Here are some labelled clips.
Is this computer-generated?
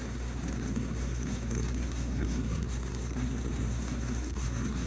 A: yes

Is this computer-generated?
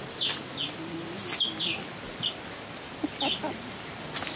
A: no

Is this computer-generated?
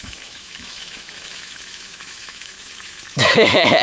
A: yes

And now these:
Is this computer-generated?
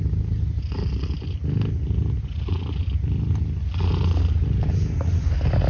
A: no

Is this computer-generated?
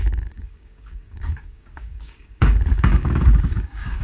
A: yes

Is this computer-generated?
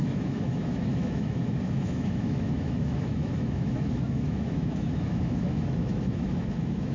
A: yes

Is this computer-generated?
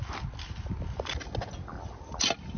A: no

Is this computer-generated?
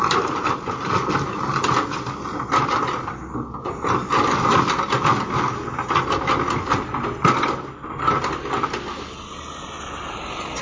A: no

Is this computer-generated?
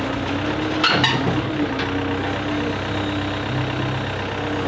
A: no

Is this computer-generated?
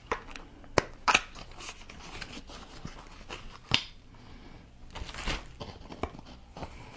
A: no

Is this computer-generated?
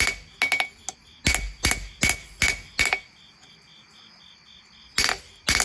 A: no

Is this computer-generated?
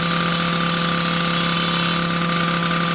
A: no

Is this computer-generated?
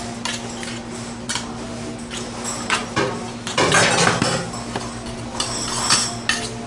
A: no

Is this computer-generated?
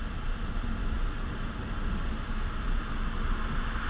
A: no